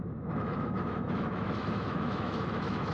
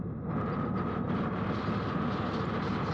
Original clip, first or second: second